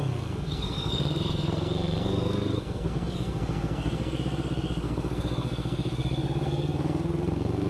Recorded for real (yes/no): no